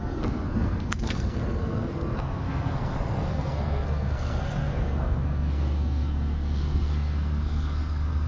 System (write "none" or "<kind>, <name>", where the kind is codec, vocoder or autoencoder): codec, SNAC